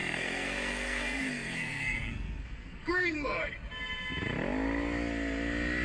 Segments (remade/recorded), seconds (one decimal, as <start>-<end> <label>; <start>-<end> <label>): 0.0-3.5 remade; 3.5-5.8 recorded